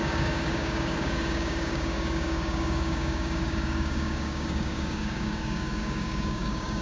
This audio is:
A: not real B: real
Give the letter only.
A